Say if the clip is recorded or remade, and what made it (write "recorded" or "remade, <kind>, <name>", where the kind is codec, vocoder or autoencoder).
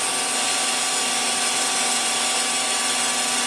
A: recorded